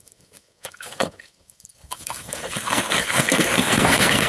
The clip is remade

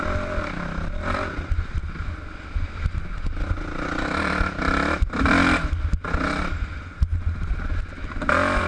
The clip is recorded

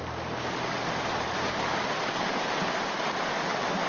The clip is recorded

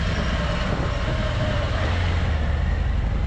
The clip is recorded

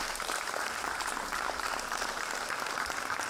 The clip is remade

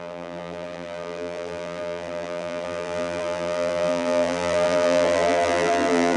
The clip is remade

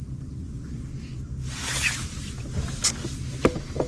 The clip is recorded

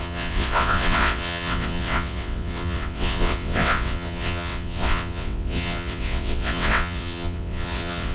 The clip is remade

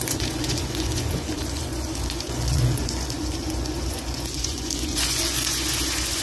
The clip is remade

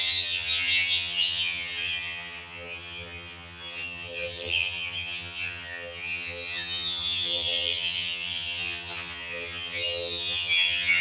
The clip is remade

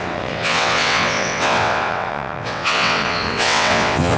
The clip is remade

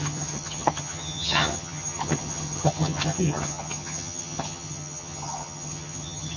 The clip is remade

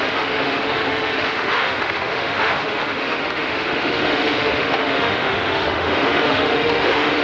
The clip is remade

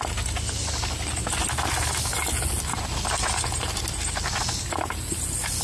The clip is recorded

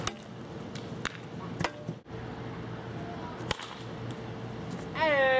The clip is recorded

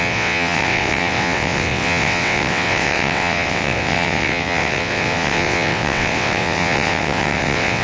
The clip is remade